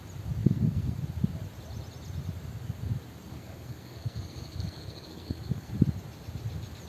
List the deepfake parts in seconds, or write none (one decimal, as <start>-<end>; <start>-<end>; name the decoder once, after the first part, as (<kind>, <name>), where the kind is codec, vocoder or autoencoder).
0.4-1.0 (codec, SNAC); 3.3-5.7

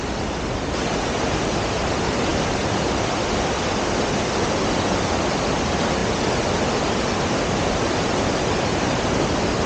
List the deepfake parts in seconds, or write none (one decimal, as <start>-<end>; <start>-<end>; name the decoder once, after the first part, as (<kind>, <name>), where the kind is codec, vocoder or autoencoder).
none

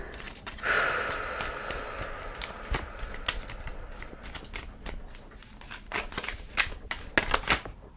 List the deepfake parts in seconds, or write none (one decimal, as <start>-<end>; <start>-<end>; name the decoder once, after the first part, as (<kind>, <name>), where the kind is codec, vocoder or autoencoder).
none

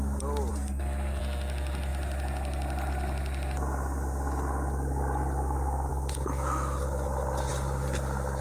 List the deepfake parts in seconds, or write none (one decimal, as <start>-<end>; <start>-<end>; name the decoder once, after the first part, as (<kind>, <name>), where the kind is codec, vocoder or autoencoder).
0.5-1.2 (codec, SNAC)

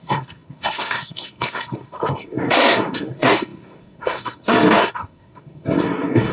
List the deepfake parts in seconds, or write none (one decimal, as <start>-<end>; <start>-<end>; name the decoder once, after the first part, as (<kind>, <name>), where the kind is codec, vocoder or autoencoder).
0.0-6.3 (codec, SNAC)

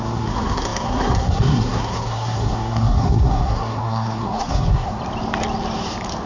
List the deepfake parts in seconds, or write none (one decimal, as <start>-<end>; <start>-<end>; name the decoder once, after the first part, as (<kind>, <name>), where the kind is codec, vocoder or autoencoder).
0.0-5.0 (codec, SNAC)